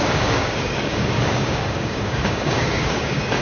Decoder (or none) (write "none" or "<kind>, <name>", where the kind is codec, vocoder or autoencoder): codec, DAC